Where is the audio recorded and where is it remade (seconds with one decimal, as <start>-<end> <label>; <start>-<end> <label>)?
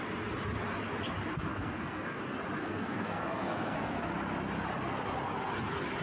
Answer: 0.0-1.5 recorded; 1.5-2.2 remade; 2.2-2.6 recorded; 2.6-4.0 remade; 4.0-6.0 recorded